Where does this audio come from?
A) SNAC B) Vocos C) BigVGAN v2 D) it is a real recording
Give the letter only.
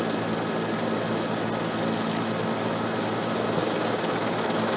D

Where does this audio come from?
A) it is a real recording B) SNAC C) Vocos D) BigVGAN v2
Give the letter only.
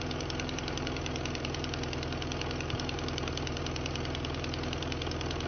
D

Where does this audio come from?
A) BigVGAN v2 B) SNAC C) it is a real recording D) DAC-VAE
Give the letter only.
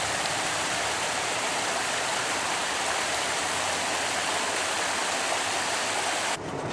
A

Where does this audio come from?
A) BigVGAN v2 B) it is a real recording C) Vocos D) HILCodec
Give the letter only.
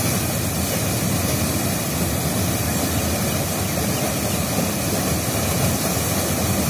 B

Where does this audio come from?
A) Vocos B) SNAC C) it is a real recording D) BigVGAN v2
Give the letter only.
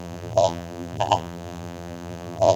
D